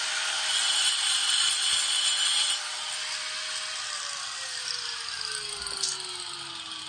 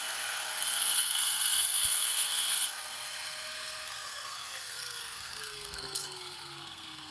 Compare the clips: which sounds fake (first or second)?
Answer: second